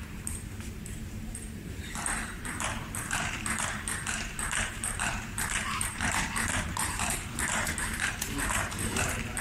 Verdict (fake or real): fake